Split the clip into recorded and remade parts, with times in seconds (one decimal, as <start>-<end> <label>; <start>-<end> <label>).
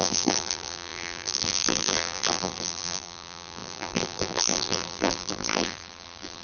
0.0-6.4 remade